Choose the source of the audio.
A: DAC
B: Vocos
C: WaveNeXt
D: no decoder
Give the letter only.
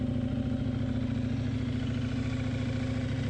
D